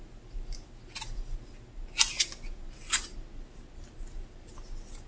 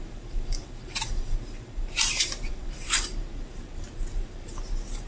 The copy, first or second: second